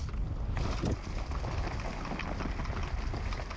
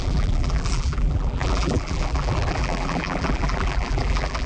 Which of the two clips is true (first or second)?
first